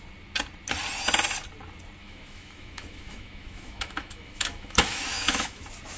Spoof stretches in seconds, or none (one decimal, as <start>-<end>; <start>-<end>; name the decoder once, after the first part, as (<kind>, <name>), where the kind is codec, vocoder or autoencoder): 2.0-5.6 (autoencoder, DAC-VAE)